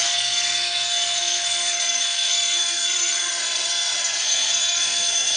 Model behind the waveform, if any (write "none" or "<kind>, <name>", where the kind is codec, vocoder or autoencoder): codec, SNAC